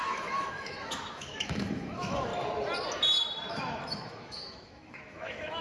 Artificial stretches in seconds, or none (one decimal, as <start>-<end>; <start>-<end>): 0.0-2.3; 3.5-5.6